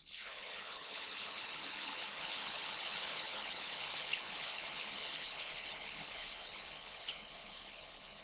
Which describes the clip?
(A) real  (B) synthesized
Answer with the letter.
B